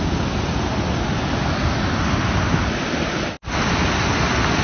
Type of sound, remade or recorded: recorded